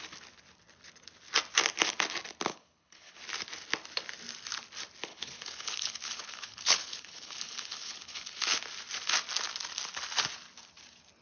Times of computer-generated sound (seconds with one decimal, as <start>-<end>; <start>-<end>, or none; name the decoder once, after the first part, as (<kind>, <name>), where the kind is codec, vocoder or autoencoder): 2.5-3.2 (codec, HILCodec); 5.1-8.4